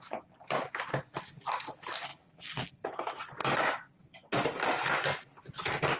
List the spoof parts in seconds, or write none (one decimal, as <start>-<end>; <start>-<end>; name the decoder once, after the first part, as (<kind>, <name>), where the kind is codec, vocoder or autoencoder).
2.1-2.7 (vocoder, BigVGAN v2)